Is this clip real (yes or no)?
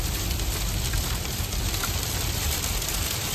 no